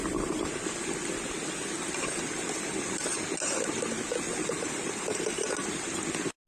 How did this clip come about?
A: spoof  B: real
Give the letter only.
B